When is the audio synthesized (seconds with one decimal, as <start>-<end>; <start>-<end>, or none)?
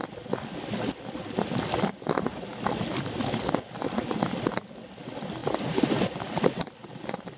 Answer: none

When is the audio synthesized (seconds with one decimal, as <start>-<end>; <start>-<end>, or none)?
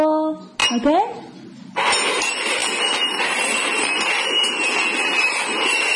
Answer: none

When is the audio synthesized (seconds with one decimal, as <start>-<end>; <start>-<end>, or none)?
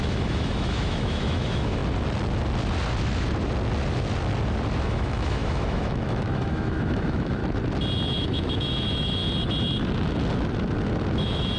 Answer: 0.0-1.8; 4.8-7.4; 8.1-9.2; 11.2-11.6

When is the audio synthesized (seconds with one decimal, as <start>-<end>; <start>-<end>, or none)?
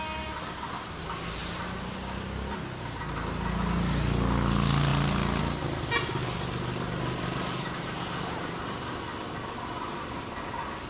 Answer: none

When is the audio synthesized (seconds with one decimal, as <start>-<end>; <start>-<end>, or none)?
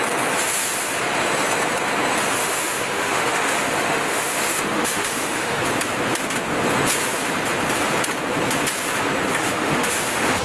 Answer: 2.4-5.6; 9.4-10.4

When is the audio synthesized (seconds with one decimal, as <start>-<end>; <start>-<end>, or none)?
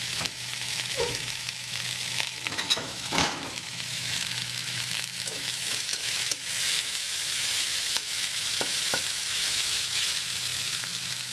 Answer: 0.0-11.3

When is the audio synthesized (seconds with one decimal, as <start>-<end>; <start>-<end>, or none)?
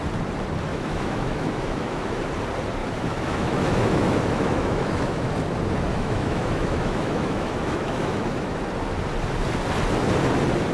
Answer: 0.7-2.2; 2.8-5.3; 5.9-8.6